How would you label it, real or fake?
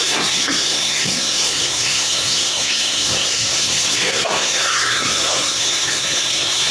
fake